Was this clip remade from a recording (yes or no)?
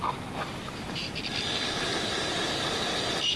no